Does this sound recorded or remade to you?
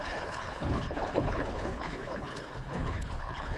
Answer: remade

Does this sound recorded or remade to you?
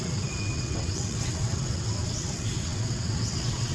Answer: remade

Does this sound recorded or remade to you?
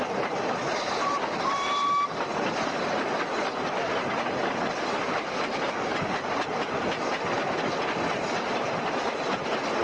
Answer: recorded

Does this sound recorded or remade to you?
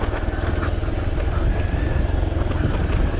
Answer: recorded